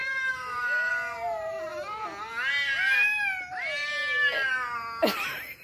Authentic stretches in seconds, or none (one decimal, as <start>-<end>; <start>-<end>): 0.9-5.6